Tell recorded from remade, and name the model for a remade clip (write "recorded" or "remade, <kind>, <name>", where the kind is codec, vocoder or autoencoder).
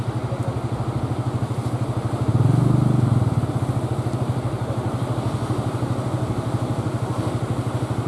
recorded